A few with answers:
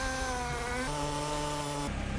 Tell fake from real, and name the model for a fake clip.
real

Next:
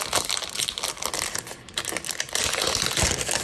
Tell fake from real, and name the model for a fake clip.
real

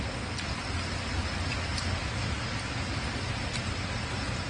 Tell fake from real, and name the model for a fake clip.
real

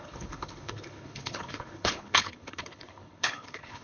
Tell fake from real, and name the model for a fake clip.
fake, codec, HILCodec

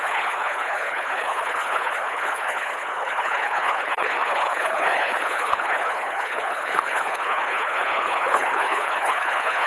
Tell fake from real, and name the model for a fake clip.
fake, codec, HILCodec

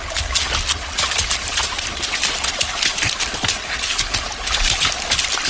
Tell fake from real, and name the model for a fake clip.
real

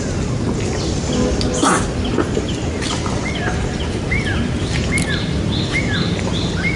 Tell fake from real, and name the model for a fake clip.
real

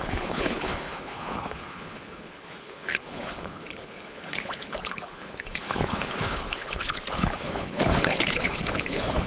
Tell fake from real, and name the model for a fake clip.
fake, codec, HILCodec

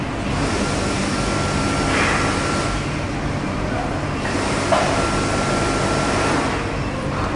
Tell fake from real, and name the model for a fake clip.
real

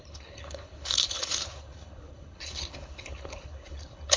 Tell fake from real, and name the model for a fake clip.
fake, codec, HILCodec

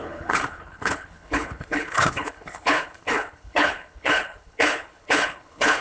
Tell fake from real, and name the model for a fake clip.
fake, codec, HILCodec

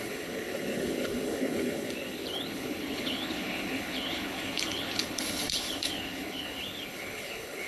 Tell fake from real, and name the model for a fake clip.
fake, codec, HILCodec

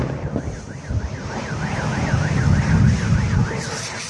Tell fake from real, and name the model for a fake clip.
real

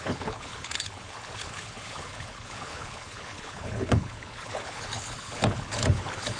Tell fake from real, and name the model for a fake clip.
fake, codec, HILCodec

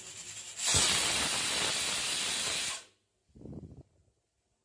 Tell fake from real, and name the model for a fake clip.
real